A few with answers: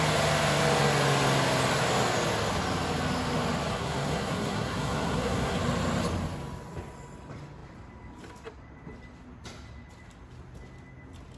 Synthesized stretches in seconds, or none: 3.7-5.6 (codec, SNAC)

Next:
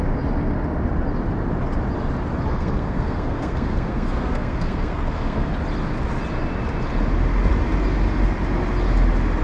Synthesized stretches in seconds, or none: 2.5-5.5 (codec, SNAC)

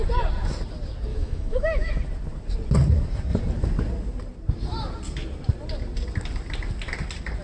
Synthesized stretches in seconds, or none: 1.1-2.0 (autoencoder, DAC-VAE)

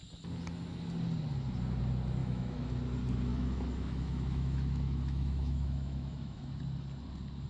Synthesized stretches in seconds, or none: 2.2-2.7 (autoencoder, DAC-VAE); 3.3-6.6

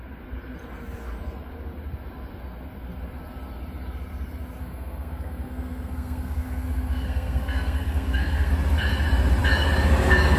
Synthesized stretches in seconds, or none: 4.6-8.5 (codec, SNAC)

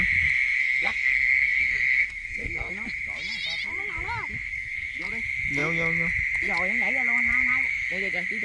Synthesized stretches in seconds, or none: 0.6-2.7 (codec, SNAC); 4.5-5.0

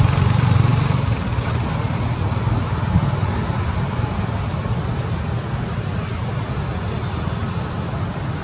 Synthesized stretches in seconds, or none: none